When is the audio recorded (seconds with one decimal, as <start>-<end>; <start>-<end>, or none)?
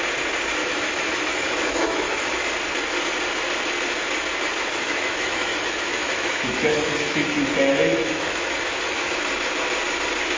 0.0-0.6; 2.3-4.7; 9.2-10.4